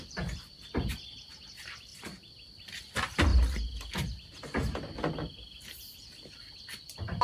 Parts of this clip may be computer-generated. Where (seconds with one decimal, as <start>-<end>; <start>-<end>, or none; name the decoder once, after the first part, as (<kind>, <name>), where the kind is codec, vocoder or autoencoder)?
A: none